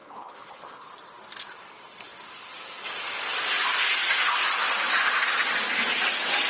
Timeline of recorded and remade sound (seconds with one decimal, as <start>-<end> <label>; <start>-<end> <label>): 0.0-0.9 remade; 0.9-6.5 recorded